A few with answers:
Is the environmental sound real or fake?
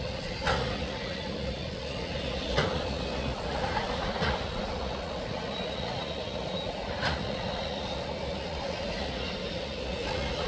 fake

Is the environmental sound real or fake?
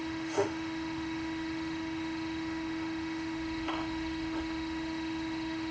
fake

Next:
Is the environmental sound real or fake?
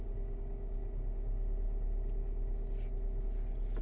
real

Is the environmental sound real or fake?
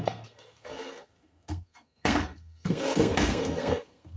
fake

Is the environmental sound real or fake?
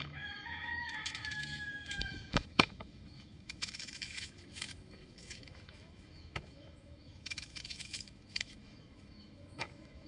fake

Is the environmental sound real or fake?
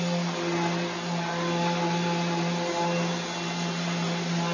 real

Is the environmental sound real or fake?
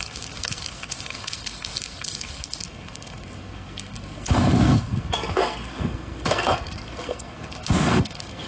fake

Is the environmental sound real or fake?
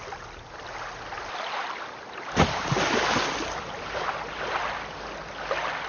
real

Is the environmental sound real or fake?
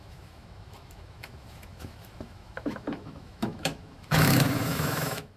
fake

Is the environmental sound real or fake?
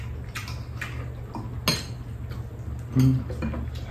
real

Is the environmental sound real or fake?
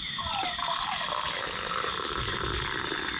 real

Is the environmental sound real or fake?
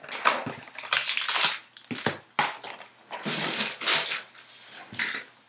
real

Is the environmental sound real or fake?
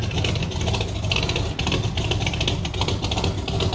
real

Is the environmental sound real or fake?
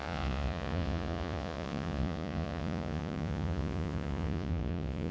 fake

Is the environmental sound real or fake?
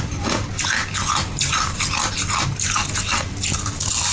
real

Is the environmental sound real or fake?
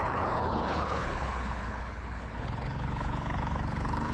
fake